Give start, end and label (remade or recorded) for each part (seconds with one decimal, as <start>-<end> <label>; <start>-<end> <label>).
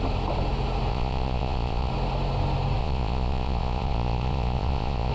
0.0-0.9 recorded; 0.9-1.9 remade; 1.9-2.8 recorded; 2.8-5.1 remade